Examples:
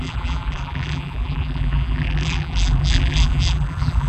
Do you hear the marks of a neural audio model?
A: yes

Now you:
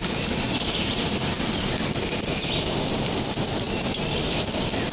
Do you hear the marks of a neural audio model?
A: no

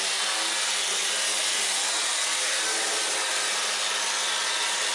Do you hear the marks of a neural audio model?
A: no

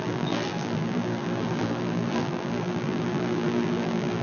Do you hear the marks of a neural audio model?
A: yes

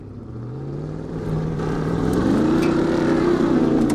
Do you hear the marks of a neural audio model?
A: yes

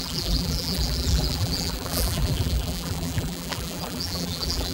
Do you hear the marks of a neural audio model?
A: yes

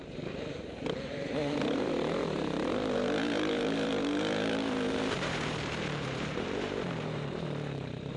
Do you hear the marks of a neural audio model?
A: yes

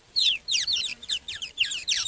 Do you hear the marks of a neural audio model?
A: yes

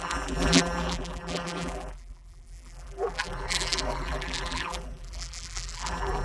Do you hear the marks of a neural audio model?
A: yes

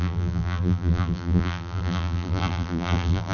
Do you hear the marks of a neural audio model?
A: yes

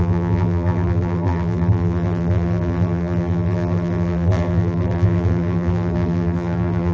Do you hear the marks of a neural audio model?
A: yes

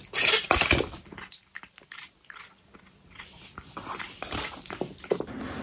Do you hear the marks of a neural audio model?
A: yes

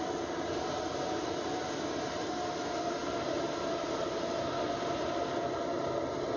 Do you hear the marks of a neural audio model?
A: no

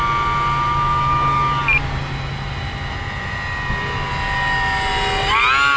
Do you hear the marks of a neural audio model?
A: no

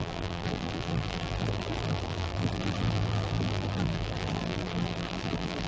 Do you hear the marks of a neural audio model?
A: yes